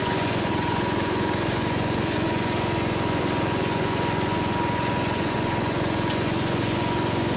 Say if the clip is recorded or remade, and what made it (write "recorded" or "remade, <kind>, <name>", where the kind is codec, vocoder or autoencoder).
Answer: remade, vocoder, Vocos